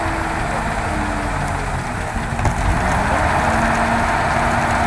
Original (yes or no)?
yes